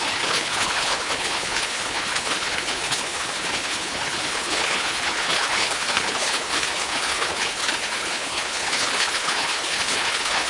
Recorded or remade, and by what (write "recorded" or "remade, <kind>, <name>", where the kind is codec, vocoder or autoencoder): remade, codec, HILCodec